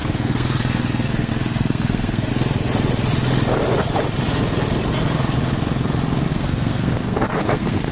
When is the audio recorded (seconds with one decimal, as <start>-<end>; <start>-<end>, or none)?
2.3-6.3